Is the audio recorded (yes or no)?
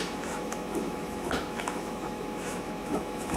no